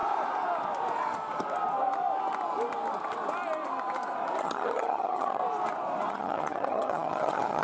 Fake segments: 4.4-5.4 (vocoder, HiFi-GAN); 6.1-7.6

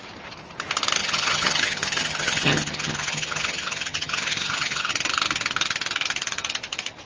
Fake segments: 1.0-4.9 (vocoder, HiFi-GAN)